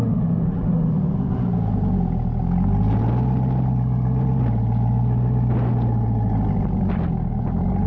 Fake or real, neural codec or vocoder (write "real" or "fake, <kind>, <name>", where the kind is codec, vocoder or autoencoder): real